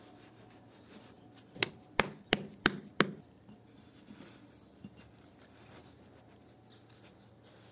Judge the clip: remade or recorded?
recorded